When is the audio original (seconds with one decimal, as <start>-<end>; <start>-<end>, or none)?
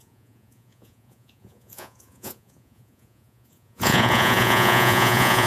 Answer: none